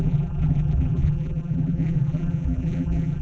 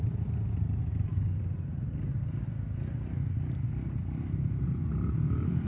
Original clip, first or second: second